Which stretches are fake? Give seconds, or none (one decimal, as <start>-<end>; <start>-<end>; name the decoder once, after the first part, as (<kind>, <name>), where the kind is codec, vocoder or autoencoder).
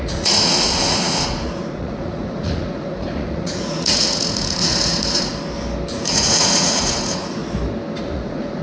0.0-5.3 (vocoder, Vocos); 5.9-7.4; 8.0-8.6